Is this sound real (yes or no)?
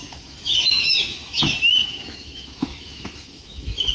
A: no